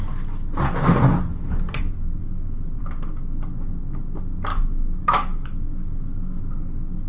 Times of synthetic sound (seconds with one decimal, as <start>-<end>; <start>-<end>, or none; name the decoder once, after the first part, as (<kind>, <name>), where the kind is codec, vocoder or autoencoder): 1.3-1.8 (autoencoder, DAC-VAE); 2.2-2.8; 4.5-6.4